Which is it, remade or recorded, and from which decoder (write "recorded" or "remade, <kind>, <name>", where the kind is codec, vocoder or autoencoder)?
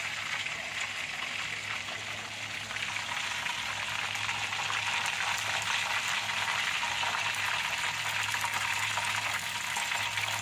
recorded